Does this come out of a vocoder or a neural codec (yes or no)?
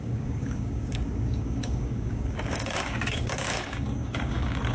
yes